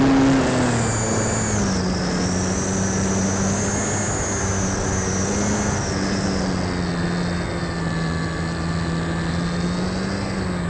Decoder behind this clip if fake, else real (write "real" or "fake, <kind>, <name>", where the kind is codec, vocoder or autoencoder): real